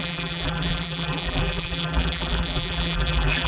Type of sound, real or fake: fake